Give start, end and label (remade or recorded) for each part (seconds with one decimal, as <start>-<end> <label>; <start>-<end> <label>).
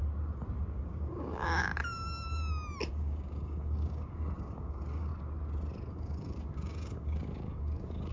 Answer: 0.0-0.7 recorded; 0.7-1.7 remade; 1.7-2.9 recorded; 2.9-5.1 remade; 5.1-5.9 recorded; 5.9-8.1 remade